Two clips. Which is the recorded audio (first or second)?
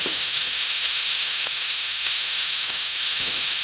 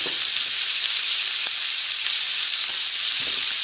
second